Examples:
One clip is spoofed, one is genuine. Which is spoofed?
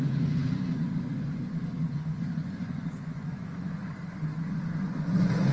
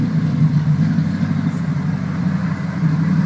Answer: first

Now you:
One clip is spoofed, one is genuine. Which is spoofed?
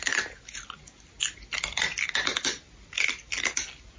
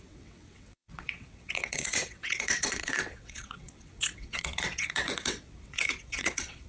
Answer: second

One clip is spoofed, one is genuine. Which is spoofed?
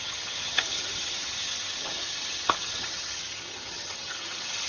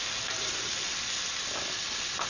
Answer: first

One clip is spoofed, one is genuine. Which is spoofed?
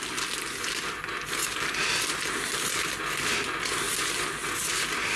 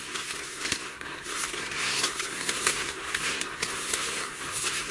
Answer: second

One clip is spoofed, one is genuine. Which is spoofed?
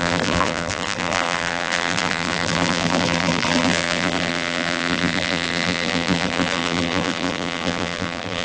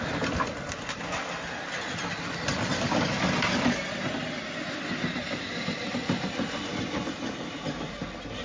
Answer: first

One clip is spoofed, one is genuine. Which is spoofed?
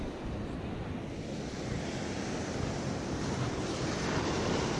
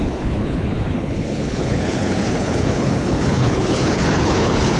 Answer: second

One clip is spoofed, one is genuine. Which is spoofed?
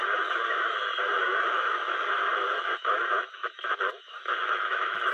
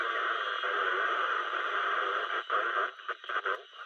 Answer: first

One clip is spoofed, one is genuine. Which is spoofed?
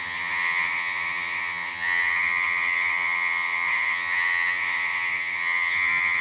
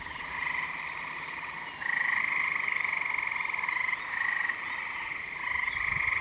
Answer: first